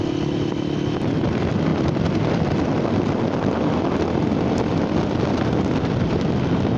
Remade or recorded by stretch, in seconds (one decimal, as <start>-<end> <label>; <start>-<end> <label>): 0.0-6.8 recorded